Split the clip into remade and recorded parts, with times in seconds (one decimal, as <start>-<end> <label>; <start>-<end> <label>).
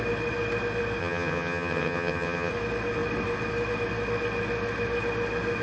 0.0-1.0 recorded; 1.0-2.5 remade; 2.5-5.6 recorded